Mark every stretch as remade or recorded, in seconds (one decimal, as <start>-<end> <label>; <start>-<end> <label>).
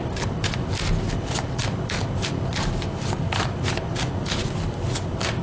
0.0-0.7 remade; 0.7-1.6 recorded; 1.6-5.4 remade